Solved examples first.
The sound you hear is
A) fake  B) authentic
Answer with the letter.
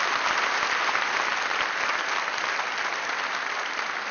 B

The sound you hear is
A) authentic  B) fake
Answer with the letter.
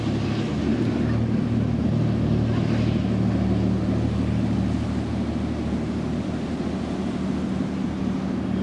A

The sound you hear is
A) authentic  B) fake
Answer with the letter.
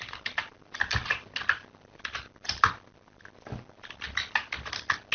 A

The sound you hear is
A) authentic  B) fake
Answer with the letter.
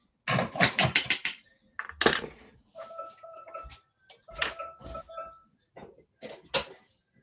A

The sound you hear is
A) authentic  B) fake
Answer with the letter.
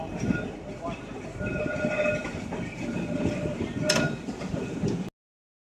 A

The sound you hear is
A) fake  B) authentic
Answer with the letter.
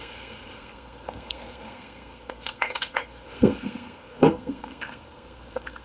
A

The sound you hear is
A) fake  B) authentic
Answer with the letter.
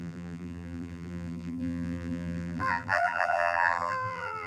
A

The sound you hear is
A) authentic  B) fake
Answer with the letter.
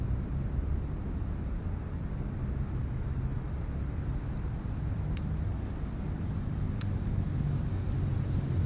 A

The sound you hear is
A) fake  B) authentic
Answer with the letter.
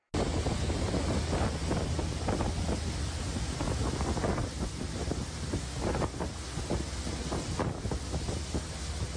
B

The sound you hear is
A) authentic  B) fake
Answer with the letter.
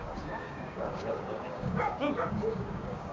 B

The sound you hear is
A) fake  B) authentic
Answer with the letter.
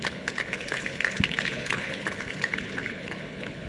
A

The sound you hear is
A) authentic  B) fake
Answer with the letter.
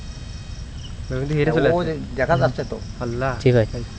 A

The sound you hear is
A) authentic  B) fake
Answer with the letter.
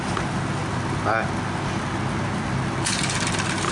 A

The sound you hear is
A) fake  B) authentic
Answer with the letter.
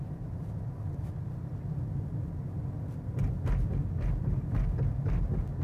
B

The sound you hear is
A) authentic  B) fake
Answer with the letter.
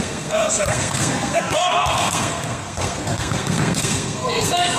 B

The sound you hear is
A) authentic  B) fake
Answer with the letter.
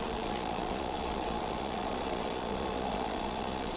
B